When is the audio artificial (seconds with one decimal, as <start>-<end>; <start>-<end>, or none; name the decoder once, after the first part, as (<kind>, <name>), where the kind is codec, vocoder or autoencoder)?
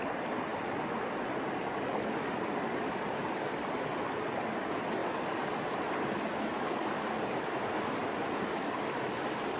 none